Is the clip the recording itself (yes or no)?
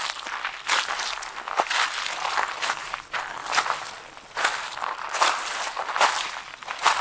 yes